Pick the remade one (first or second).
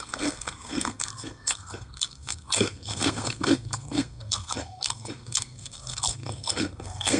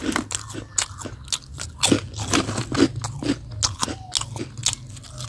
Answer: first